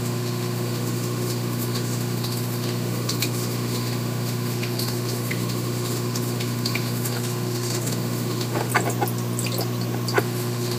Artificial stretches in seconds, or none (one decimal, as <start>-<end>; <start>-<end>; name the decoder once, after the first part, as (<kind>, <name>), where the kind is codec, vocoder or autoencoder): 0.0-8.7 (autoencoder, DAC-VAE); 10.2-10.8